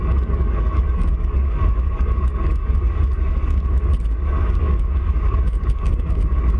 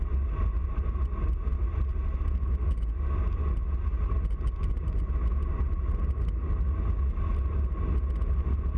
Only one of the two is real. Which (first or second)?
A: second